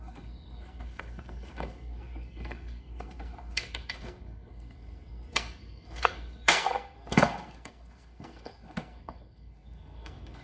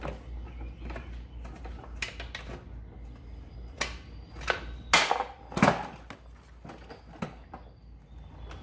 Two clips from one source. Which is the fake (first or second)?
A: first